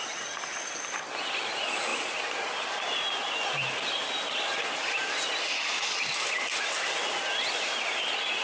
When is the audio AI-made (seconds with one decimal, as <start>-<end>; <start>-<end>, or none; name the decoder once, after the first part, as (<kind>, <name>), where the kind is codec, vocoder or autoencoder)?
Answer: none